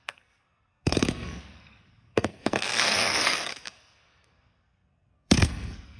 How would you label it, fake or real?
fake